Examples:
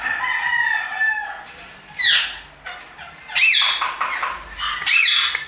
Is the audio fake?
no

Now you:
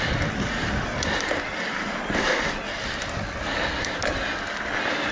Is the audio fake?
no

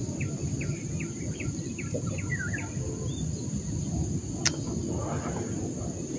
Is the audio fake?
no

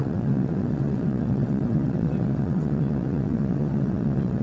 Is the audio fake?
yes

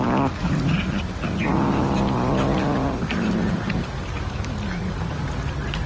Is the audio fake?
no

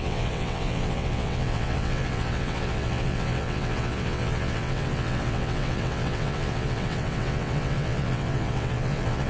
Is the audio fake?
yes